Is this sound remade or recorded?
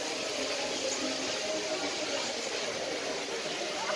recorded